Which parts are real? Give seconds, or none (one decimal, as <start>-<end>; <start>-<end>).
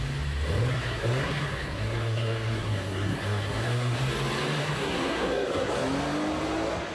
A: 0.0-0.7; 4.0-4.6; 5.7-6.9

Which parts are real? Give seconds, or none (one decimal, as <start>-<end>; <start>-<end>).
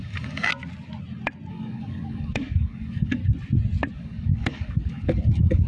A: 0.5-1.5; 3.2-3.9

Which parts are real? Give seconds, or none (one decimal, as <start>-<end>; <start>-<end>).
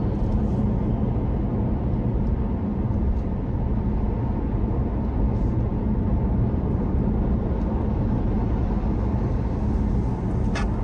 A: 0.0-10.8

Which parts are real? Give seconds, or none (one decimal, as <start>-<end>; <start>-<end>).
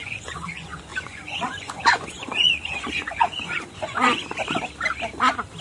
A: 4.2-5.6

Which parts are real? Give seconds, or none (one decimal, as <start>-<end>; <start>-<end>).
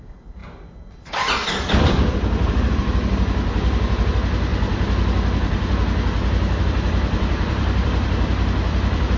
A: 0.4-1.8; 4.5-6.6